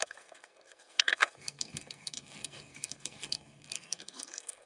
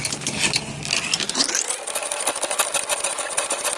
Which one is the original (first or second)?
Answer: second